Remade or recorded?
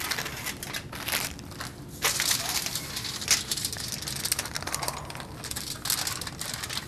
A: recorded